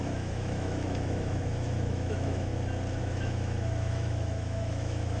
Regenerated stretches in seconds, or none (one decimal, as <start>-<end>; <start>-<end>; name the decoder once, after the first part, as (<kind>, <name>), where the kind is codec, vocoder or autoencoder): 0.0-2.5 (autoencoder, DAC-VAE); 3.0-5.2